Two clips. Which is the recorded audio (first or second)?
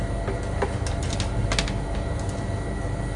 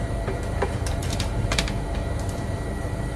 first